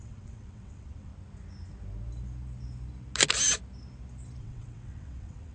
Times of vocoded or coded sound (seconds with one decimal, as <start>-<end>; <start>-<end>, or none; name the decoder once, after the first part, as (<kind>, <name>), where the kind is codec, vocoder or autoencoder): 0.0-1.1 (vocoder, WaveNeXt); 4.4-5.5